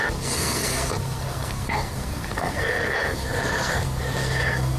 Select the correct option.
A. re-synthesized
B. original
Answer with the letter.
A